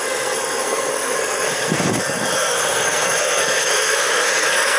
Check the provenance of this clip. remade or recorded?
remade